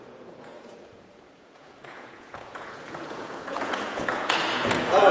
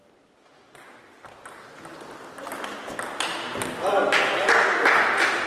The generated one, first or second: first